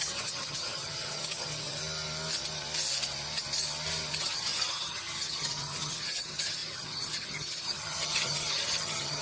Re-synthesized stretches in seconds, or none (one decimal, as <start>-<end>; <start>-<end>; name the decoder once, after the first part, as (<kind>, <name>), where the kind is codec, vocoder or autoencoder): 0.0-1.8 (vocoder, HiFi-GAN); 4.1-9.2